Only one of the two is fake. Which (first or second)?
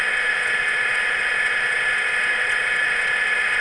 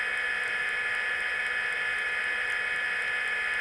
first